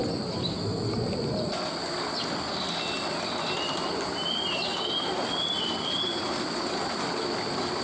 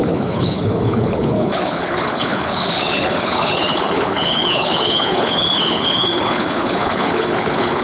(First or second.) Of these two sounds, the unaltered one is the first